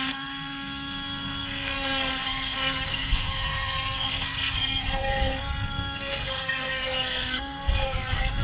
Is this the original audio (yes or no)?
no